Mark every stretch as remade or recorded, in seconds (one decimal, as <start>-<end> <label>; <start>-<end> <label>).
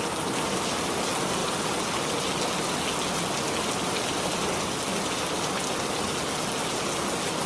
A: 0.0-7.5 recorded